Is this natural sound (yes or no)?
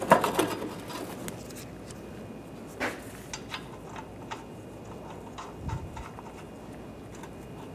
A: yes